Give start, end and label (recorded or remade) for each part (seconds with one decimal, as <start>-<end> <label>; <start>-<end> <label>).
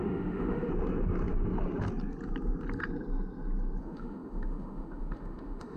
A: 0.0-0.7 remade; 0.7-3.8 recorded; 3.8-5.8 remade